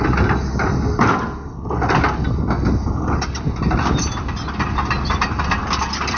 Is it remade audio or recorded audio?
recorded